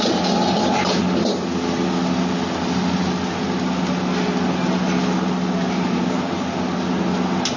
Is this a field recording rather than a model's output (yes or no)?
yes